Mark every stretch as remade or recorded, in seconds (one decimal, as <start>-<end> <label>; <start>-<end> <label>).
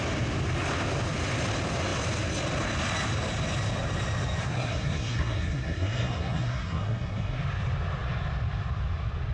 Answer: 0.0-4.4 recorded; 4.4-7.4 remade; 7.4-9.3 recorded